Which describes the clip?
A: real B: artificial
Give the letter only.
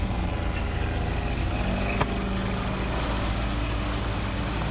A